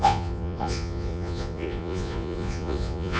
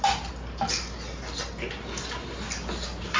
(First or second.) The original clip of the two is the second